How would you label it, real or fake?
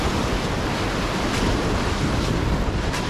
real